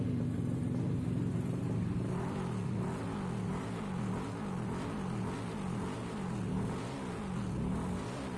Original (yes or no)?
yes